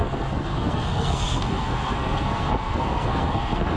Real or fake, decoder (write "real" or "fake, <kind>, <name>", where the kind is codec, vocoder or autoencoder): fake, codec, SNAC